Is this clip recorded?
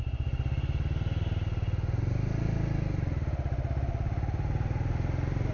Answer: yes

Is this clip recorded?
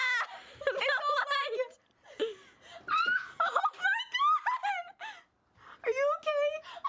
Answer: yes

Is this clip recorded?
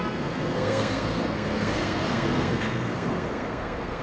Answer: no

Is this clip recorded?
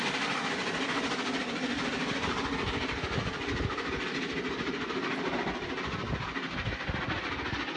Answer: yes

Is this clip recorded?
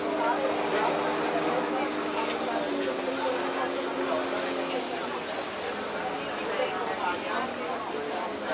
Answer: yes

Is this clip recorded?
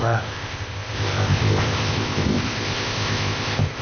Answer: no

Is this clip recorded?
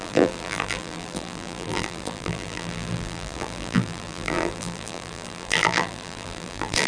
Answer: no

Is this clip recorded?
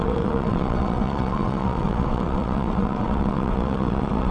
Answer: no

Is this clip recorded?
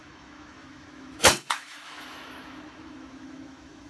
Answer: no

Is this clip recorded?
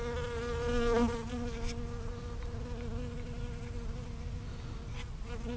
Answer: yes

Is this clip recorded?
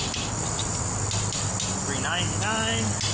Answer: yes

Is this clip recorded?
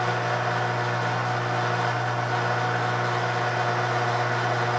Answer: yes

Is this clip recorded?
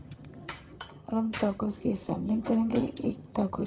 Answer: no